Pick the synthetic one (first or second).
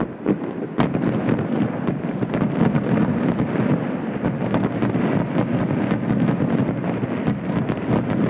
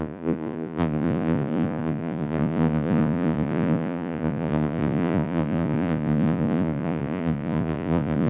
second